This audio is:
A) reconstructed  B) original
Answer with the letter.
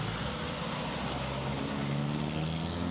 B